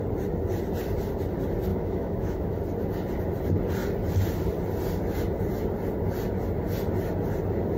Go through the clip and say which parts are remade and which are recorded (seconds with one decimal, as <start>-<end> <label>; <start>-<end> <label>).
0.0-1.7 recorded; 1.7-2.6 remade; 2.6-7.8 recorded